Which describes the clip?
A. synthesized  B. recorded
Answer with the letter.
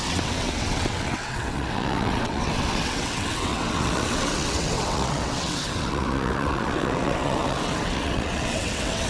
A